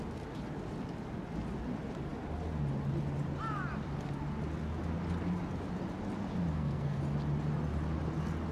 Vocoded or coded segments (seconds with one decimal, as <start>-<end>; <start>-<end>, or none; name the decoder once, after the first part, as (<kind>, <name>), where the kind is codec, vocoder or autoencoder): 6.5-7.0 (codec, SNAC)